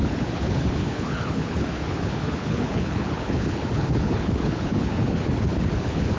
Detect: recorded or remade remade